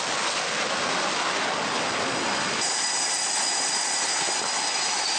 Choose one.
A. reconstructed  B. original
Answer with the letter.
B